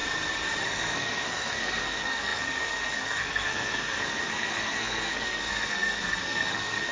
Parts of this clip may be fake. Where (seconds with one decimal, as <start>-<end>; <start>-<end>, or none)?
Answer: 0.6-6.9